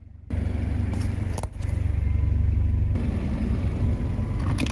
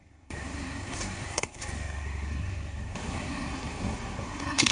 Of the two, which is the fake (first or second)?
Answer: second